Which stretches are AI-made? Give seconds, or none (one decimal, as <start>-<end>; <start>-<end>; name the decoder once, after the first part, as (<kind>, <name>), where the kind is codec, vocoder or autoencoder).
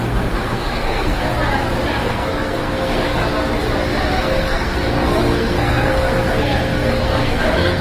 0.0-1.3 (codec, SNAC); 2.0-3.2; 4.1-7.8